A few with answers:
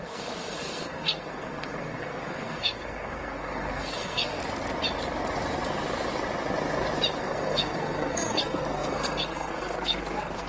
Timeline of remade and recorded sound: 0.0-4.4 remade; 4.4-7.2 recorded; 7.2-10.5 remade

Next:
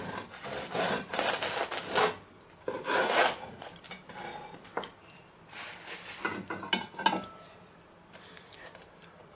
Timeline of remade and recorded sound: 0.0-3.0 recorded; 3.0-3.7 remade; 3.7-9.4 recorded

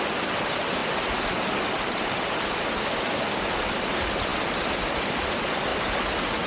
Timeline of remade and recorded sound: 0.0-6.5 recorded

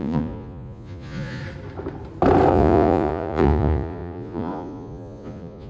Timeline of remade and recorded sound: 0.0-1.4 remade; 1.4-2.5 recorded; 2.5-5.7 remade

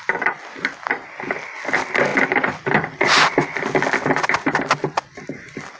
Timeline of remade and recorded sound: 0.0-5.8 recorded

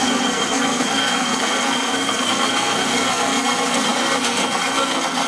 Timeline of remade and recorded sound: 0.0-5.3 remade

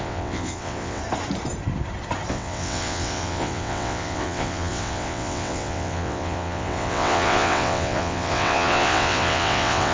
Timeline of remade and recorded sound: 0.0-1.0 remade; 1.0-2.3 recorded; 2.3-9.9 remade

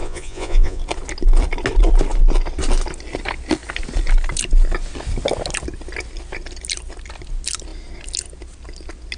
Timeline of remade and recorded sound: 0.0-0.8 remade; 0.8-9.2 recorded